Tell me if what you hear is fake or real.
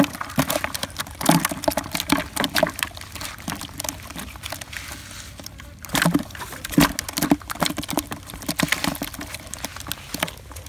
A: real